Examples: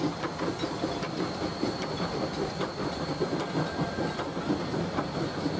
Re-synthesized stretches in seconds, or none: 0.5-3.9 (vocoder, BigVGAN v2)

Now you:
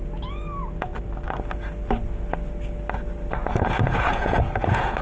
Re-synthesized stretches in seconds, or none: 0.0-0.9 (vocoder, Vocos); 3.5-5.0